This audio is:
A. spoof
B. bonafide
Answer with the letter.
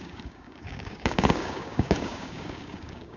A